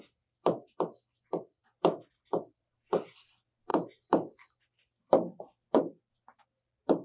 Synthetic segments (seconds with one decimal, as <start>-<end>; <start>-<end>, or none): 1.6-2.8